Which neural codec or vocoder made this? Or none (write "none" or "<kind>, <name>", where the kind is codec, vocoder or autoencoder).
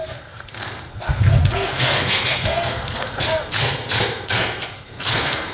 codec, SNAC